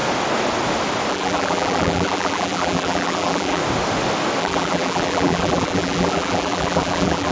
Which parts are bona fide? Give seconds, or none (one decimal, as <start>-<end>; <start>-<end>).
0.0-1.1; 3.6-4.4